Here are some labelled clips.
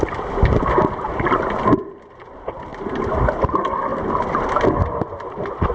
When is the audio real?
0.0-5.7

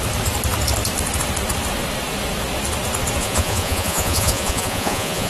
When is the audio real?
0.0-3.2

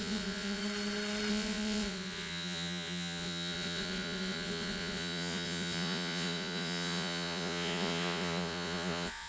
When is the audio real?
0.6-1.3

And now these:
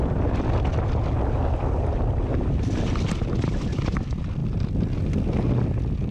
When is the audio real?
0.0-6.1

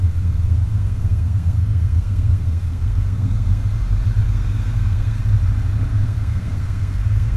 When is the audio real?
3.6-4.3; 5.2-5.9

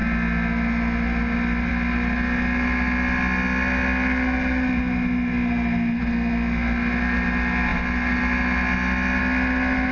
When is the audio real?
0.0-9.9

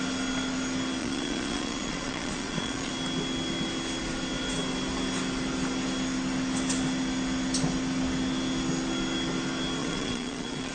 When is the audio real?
0.0-1.0; 2.9-9.8